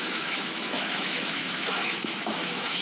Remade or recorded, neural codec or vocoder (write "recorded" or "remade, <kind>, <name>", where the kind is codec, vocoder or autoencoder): remade, autoencoder, DAC-VAE